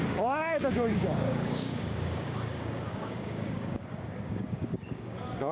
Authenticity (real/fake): fake